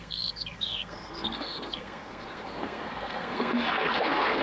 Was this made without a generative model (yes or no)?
no